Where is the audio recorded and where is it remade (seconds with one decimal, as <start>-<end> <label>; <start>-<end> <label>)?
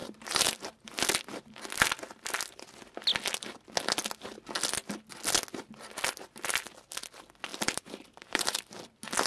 0.0-1.0 remade; 1.0-7.5 recorded; 7.5-8.6 remade; 8.6-9.3 recorded